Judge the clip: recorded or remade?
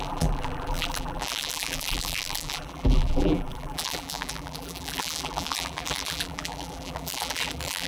remade